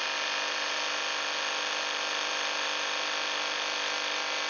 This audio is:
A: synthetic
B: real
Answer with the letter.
B